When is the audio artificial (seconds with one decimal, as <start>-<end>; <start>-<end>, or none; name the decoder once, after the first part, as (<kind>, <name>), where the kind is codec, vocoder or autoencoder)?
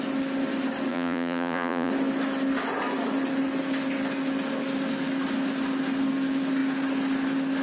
0.9-1.9 (vocoder, Vocos)